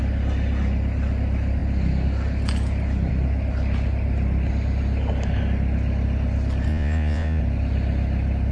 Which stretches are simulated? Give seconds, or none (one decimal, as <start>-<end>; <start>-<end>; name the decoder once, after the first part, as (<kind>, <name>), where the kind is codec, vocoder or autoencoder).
6.7-7.4 (vocoder, Vocos)